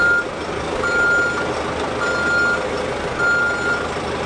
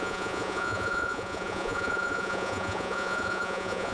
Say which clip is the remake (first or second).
second